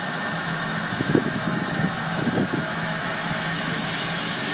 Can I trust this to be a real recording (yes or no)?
no